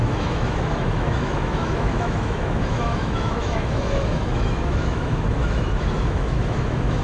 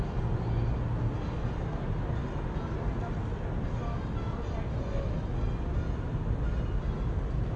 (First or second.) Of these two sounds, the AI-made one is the first